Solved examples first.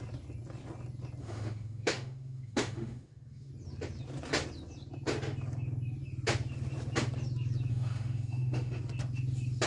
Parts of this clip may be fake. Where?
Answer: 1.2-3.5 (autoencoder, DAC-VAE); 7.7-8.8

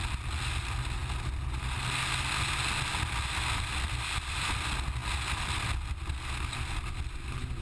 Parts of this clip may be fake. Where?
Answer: none

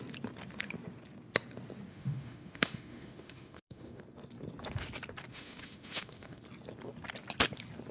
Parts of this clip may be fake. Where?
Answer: 1.9-4.0 (autoencoder, DAC-VAE); 5.3-6.4

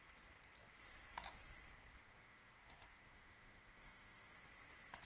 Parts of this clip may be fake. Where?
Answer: 2.0-4.3 (autoencoder, DAC-VAE)

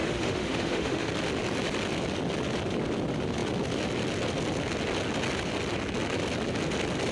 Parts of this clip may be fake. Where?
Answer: 0.0-1.1 (autoencoder, DAC-VAE)